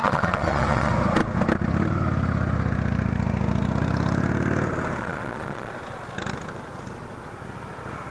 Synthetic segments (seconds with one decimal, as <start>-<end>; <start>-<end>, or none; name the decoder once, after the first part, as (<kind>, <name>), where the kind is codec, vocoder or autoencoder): 0.0-0.9 (vocoder, Vocos); 5.0-5.7